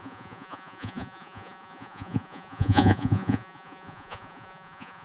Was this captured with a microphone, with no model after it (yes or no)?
no